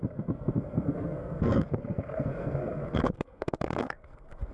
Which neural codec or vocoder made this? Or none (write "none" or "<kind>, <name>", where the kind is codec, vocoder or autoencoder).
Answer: codec, SNAC